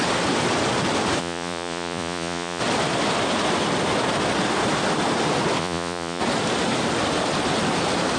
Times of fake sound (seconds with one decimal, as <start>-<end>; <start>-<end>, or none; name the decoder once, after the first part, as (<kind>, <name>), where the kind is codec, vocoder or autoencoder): 1.2-2.6 (vocoder, Vocos); 5.6-6.2